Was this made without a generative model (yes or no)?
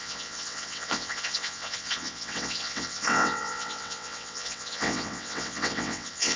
no